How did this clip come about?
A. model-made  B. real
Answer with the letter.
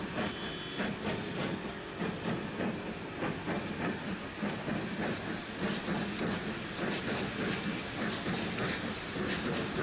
B